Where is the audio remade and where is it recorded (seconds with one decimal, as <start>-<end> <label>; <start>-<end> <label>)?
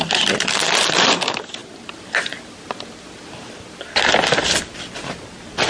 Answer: 0.0-1.6 recorded; 1.6-2.2 remade; 2.2-5.7 recorded